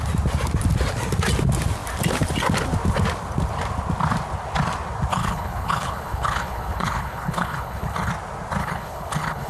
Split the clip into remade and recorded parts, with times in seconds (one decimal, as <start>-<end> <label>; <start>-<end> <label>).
0.0-5.1 recorded; 5.1-8.1 remade; 8.1-8.6 recorded; 8.6-9.5 remade